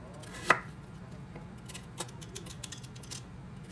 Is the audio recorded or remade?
recorded